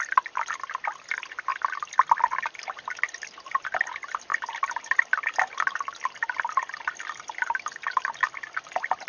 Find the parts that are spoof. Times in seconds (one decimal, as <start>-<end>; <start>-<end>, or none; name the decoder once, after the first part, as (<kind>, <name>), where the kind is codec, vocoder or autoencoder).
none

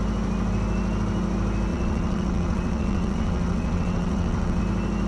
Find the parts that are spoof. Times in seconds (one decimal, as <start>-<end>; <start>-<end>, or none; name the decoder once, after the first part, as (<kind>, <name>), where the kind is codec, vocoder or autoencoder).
1.7-4.6 (vocoder, WaveNeXt)

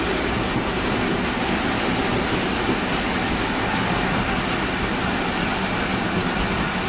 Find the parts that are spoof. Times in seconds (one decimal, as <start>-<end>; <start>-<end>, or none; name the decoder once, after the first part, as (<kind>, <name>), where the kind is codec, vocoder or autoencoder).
none

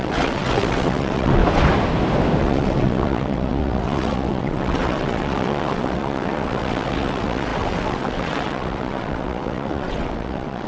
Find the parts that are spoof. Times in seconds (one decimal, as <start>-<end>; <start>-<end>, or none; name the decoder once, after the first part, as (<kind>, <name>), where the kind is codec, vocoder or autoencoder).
0.0-1.4 (vocoder, WaveNeXt); 2.4-10.7